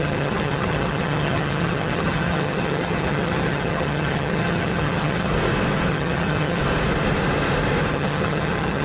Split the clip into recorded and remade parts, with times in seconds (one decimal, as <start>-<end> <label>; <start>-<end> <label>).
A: 0.0-5.3 remade; 5.3-5.9 recorded; 5.9-6.6 remade; 6.6-7.9 recorded; 7.9-8.8 remade